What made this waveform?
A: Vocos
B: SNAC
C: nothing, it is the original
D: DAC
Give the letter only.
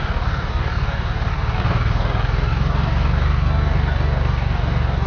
D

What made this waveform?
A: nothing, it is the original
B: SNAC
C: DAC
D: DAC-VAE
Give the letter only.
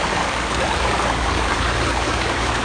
C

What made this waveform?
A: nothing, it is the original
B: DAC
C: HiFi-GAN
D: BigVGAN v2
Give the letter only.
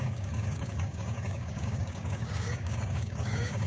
B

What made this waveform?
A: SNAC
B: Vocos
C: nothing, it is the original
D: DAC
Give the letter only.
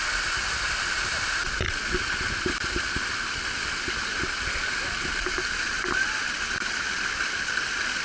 C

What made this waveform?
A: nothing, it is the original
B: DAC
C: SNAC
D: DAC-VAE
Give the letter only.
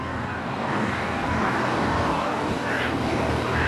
B